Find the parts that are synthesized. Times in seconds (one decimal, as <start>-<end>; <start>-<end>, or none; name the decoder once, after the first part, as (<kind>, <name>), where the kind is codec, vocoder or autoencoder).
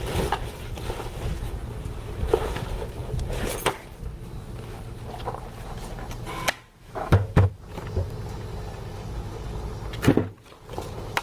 6.8-7.5 (autoencoder, DAC-VAE)